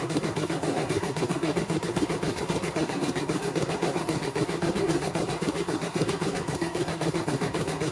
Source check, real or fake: fake